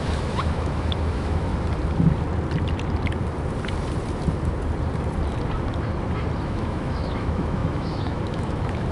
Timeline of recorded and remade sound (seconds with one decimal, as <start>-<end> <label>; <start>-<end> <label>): 0.0-1.5 remade; 1.5-6.4 recorded; 6.4-8.9 remade